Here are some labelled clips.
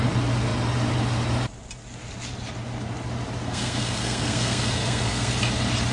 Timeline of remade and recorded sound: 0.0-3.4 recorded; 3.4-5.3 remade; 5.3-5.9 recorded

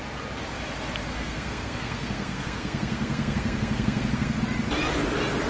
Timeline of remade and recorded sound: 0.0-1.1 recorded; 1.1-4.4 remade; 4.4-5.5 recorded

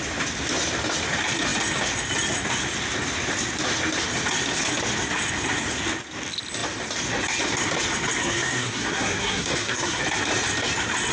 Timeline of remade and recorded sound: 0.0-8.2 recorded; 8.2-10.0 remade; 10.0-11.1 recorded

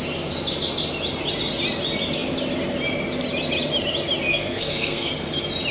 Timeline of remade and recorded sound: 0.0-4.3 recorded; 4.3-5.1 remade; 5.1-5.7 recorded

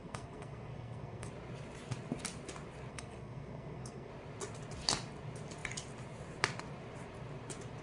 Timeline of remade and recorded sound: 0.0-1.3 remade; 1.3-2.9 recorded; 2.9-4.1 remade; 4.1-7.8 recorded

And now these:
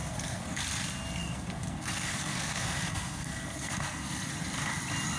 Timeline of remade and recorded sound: 0.0-0.6 remade; 0.6-1.2 recorded; 1.2-4.3 remade; 4.3-5.2 recorded

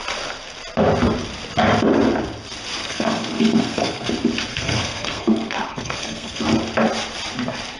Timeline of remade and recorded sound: 0.0-2.8 recorded; 2.8-4.1 remade; 4.1-4.5 recorded; 4.5-6.4 remade; 6.4-7.8 recorded

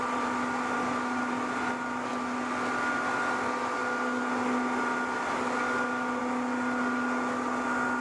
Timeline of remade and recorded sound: 0.0-8.0 recorded